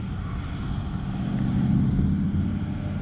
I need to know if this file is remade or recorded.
recorded